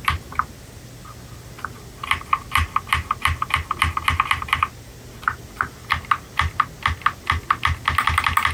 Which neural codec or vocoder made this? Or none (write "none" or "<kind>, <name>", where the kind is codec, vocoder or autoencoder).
none